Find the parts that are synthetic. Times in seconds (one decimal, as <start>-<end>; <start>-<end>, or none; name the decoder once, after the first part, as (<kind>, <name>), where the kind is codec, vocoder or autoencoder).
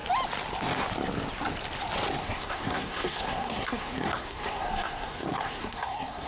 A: 2.2-6.3 (codec, SNAC)